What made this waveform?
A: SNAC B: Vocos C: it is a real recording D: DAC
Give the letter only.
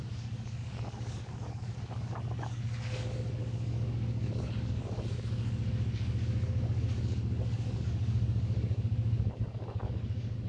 D